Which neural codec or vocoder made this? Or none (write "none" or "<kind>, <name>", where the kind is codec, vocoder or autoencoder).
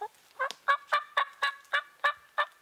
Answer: none